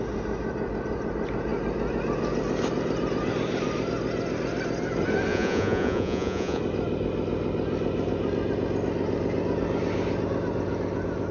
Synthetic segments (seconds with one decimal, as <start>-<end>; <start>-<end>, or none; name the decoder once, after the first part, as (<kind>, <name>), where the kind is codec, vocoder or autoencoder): 5.3-6.6 (vocoder, Vocos)